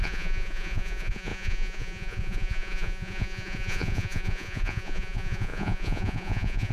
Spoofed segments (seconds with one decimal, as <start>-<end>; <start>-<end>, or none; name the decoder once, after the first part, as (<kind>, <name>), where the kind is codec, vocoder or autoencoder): 0.0-6.7 (vocoder, Vocos)